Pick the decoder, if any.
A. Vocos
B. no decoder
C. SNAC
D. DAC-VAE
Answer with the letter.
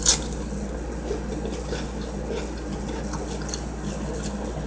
B